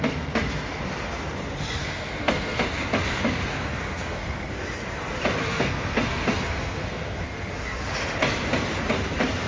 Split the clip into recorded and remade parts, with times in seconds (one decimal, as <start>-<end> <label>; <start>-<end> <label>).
0.0-1.8 recorded; 1.8-2.6 remade; 2.6-3.5 recorded; 3.5-4.5 remade; 4.5-5.4 recorded; 5.4-7.5 remade; 7.5-9.5 recorded